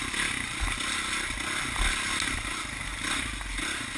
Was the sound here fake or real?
real